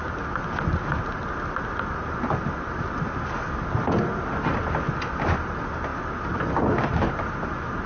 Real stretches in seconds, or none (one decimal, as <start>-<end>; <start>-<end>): 0.0-5.9; 7.1-7.9